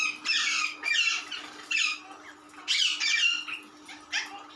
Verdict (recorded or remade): remade